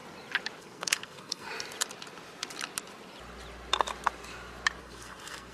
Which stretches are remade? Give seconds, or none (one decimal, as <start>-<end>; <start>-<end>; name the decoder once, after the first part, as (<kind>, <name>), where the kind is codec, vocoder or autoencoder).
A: 0.6-1.5 (codec, SNAC); 4.8-5.5